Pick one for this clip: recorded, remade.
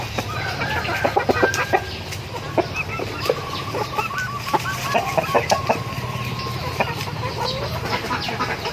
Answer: recorded